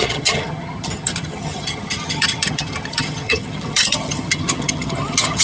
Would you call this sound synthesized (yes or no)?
yes